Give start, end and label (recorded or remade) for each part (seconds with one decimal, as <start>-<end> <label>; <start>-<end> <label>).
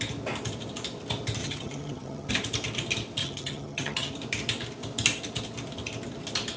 0.0-1.4 recorded; 1.4-2.3 remade; 2.3-3.2 recorded; 3.2-4.1 remade; 4.1-6.6 recorded